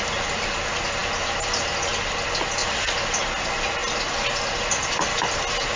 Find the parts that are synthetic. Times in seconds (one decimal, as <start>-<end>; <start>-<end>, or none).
none